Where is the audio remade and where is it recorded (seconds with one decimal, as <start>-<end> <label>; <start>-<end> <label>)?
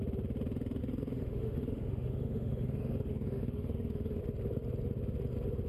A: 0.0-0.8 recorded; 0.8-4.2 remade; 4.2-5.7 recorded